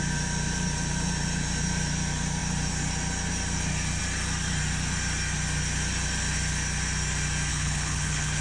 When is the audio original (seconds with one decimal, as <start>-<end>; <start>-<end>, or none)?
0.0-7.5

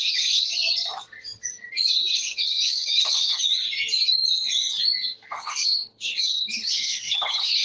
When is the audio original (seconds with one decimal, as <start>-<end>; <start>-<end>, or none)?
0.5-2.1; 3.4-5.4

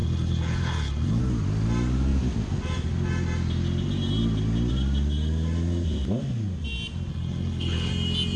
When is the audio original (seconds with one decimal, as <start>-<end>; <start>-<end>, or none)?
1.2-7.1; 7.9-8.4

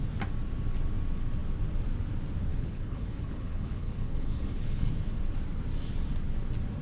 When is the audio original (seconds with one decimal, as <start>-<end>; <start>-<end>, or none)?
0.0-2.5; 5.0-6.8

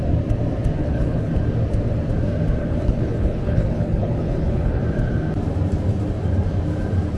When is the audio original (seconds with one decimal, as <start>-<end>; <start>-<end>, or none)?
0.0-0.8; 1.3-2.6; 4.8-7.2

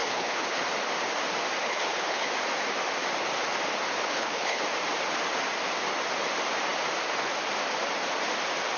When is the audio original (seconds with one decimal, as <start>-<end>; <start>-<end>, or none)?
0.6-1.6; 2.3-4.0; 4.6-8.8